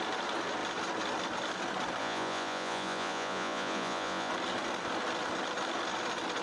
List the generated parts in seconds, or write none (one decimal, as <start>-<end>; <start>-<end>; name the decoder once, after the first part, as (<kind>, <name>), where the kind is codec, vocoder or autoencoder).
2.0-4.3 (vocoder, Vocos)